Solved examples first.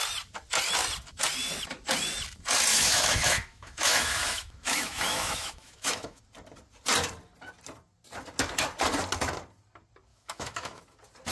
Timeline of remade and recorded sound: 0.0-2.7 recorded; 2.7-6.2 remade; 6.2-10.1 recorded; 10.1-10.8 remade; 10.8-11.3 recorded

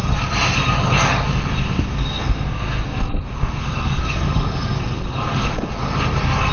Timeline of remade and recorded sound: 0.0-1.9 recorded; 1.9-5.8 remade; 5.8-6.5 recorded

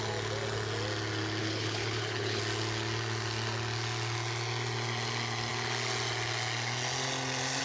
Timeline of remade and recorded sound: 0.0-1.4 recorded; 1.4-2.4 remade; 2.4-7.6 recorded

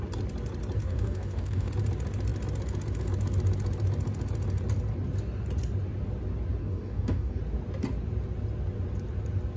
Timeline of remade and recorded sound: 0.0-0.8 recorded; 0.8-1.7 remade; 1.7-6.6 recorded; 6.6-7.4 remade; 7.4-9.6 recorded